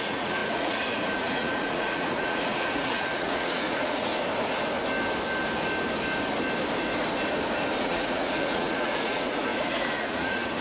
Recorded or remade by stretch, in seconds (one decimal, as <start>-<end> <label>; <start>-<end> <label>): 0.0-4.1 remade; 4.1-7.8 recorded; 7.8-10.6 remade